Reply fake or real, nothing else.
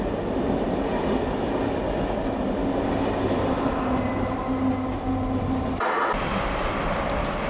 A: real